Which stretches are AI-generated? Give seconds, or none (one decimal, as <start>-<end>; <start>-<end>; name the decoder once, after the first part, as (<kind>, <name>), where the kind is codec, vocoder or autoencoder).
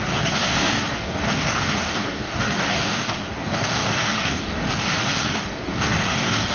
0.0-6.5 (codec, DAC)